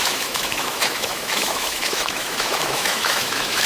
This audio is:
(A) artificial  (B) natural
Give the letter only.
A